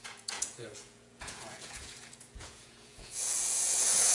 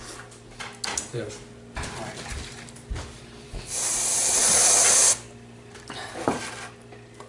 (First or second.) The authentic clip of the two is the second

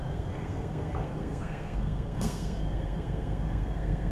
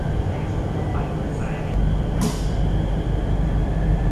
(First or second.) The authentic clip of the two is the second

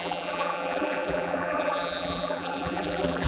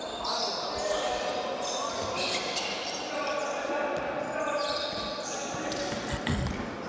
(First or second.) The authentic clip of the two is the second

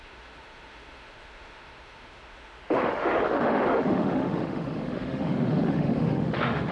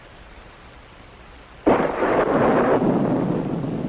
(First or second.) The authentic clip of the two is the second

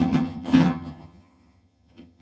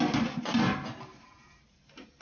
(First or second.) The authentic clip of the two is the second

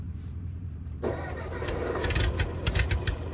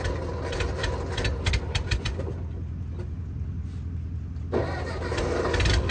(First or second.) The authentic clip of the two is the second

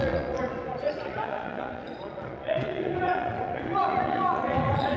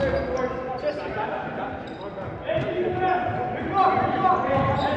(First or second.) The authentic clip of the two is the second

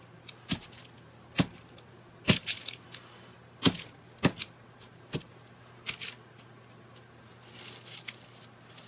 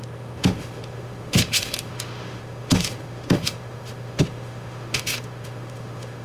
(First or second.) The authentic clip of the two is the first